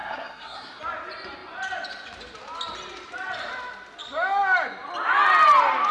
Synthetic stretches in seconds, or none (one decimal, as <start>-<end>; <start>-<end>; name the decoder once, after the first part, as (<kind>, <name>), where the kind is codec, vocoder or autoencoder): 0.0-0.8 (codec, SNAC)